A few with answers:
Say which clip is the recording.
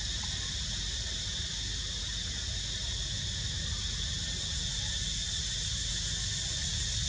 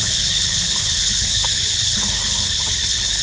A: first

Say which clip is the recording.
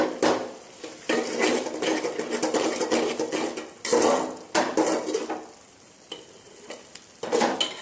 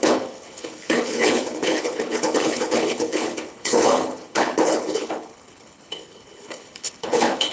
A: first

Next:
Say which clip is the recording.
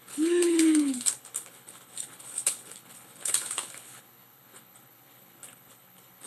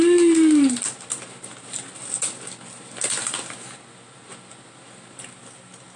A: second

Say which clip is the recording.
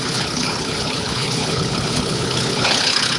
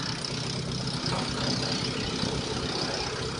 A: second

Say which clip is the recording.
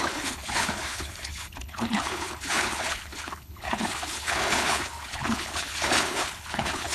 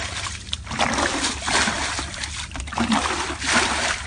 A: second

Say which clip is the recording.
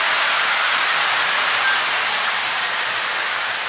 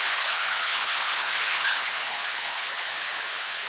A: first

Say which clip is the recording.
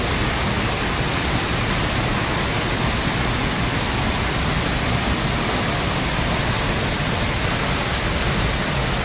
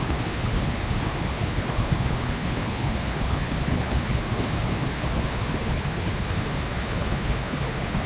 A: first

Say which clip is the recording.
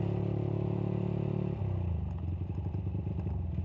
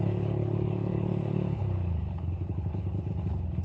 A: first